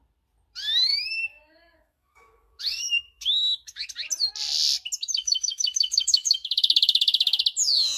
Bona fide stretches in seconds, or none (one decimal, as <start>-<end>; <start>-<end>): 0.0-1.3; 3.9-5.2; 7.4-8.0

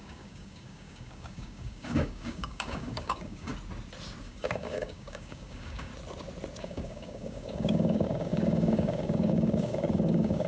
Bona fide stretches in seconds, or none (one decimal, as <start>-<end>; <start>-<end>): 3.5-4.2; 5.9-6.6

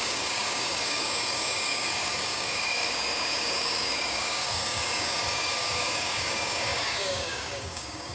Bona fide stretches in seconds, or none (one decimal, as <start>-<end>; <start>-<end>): none